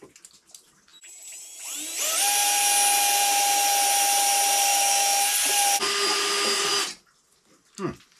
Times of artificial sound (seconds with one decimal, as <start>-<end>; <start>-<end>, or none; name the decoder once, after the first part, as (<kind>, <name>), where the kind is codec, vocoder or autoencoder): 4.7-5.3 (autoencoder, DAC-VAE)